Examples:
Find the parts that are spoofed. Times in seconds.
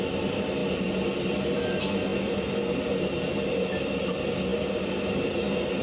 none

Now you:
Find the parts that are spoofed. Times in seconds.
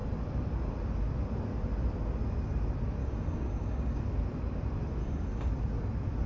3.0-4.0 (codec, DAC); 5.0-5.5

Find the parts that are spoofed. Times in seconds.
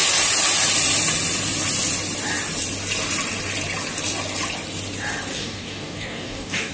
5.3-6.7 (codec, DAC)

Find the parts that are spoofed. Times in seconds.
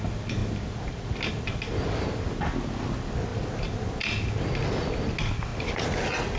none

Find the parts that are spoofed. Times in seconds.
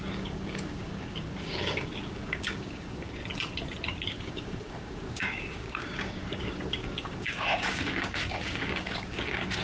0.0-3.2 (codec, DAC); 4.0-9.6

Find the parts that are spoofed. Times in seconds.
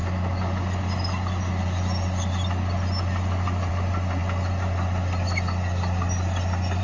none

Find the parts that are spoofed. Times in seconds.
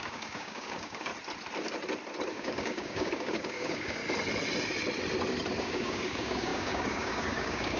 0.0-1.1 (codec, DAC); 2.3-4.0; 5.6-7.8